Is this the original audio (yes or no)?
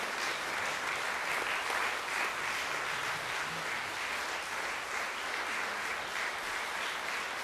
yes